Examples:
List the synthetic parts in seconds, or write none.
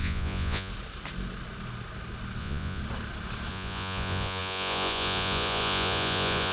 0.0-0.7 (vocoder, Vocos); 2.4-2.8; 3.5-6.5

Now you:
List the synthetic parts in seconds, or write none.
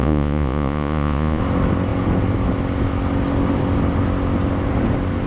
0.0-1.4 (vocoder, Vocos)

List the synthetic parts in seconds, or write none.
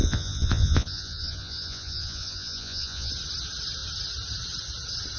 0.0-3.1 (vocoder, Vocos)